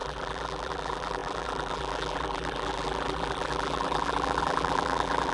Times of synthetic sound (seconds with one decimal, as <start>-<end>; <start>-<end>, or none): 0.0-5.3